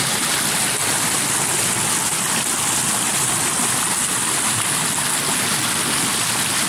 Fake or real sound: real